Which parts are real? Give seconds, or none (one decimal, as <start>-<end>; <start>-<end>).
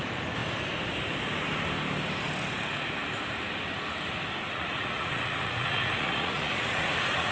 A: 0.0-4.4